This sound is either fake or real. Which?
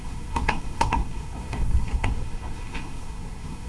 fake